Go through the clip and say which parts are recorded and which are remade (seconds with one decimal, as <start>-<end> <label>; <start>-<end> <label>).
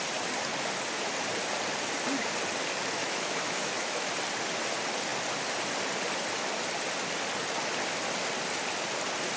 0.0-3.0 recorded; 3.0-4.1 remade; 4.1-9.4 recorded